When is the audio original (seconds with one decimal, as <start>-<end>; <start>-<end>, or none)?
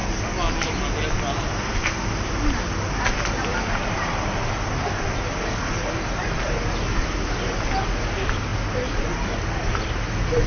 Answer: 0.0-10.5